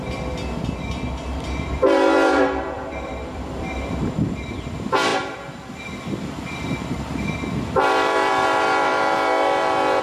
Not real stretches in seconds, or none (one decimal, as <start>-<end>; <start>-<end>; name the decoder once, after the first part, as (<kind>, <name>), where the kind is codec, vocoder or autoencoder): 0.0-8.9 (vocoder, BigVGAN v2)